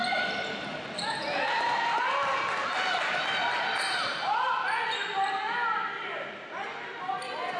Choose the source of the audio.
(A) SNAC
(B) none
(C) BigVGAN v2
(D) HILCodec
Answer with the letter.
B